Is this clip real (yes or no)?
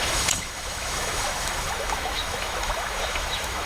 no